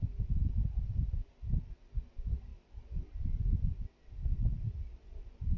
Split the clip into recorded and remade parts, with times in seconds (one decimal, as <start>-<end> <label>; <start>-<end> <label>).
0.0-5.6 recorded